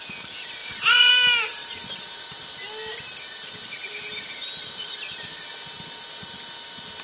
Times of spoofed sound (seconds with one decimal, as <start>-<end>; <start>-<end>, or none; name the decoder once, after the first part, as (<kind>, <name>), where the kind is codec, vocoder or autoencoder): 0.6-1.1 (vocoder, Vocos)